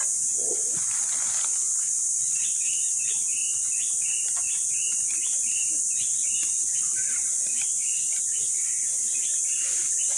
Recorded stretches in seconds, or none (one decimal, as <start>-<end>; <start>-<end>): 0.0-10.2